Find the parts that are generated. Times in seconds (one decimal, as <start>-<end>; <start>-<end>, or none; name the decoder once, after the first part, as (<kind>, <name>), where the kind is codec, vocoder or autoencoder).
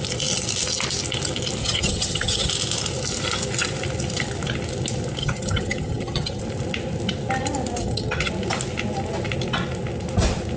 1.6-2.5 (vocoder, HiFi-GAN); 5.2-6.4; 7.8-8.3